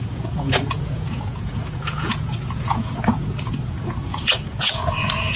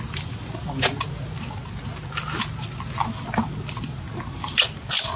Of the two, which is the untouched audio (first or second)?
second